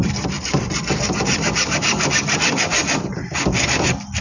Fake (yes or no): yes